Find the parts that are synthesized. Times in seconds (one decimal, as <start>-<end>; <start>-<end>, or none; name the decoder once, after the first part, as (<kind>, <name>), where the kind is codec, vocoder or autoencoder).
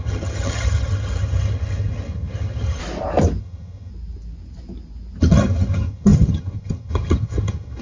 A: 0.0-2.8 (vocoder, HiFi-GAN); 3.4-3.9; 5.2-7.8